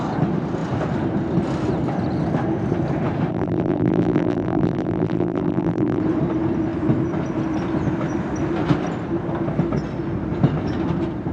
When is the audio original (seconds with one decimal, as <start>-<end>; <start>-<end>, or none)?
0.0-3.3; 6.0-11.3